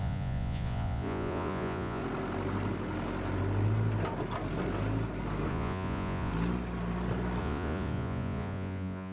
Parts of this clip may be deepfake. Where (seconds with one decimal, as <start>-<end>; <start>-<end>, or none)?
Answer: 0.0-2.0; 5.5-6.3; 7.4-9.1

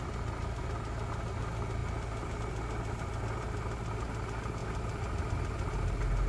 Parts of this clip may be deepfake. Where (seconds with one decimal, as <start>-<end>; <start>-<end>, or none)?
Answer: none

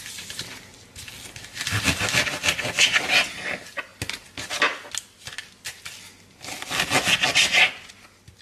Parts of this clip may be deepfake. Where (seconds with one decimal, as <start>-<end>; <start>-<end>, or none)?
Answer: none

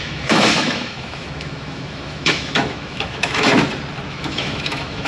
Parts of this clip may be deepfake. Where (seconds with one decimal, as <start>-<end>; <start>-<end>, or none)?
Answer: 0.0-3.5; 4.1-5.1

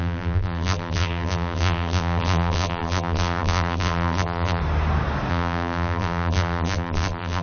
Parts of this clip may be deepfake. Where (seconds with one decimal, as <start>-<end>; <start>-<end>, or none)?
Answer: 0.0-4.6; 5.3-7.4

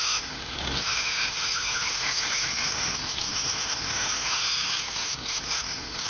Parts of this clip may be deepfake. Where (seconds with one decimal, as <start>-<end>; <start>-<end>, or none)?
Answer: 0.0-6.1

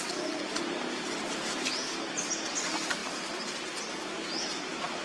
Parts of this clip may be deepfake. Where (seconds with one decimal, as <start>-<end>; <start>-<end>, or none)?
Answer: none

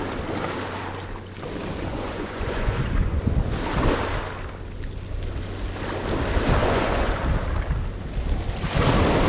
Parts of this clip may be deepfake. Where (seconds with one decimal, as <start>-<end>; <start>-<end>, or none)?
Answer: 1.9-3.2; 6.6-7.1